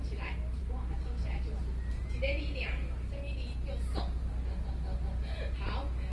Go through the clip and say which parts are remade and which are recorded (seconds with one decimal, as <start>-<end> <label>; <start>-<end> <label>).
0.0-6.1 recorded